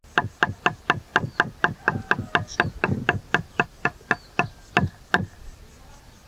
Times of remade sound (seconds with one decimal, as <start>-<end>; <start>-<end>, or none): none